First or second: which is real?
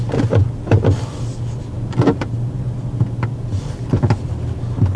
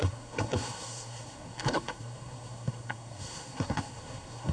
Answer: first